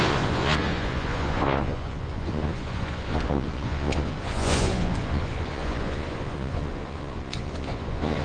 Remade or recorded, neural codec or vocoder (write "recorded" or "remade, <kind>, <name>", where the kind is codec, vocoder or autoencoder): remade, vocoder, Vocos